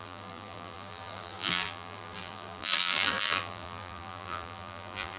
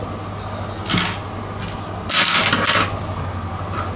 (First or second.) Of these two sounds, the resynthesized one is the first